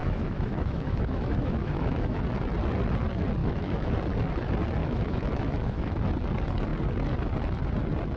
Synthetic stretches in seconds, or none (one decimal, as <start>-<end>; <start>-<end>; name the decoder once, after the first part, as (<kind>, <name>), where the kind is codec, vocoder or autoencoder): 0.0-2.2 (autoencoder, DAC-VAE); 3.4-3.9; 4.8-6.0